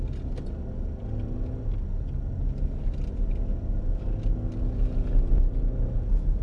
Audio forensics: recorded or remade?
recorded